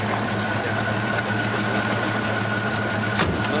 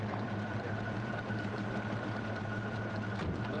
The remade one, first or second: second